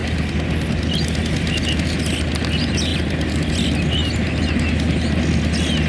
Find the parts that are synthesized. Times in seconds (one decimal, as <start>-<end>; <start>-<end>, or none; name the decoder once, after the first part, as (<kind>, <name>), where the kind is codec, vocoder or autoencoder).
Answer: none